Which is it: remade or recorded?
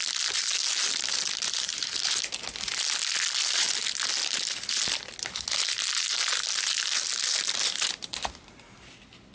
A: recorded